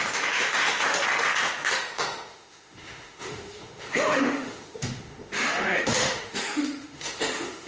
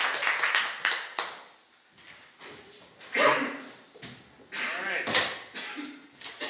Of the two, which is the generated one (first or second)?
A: first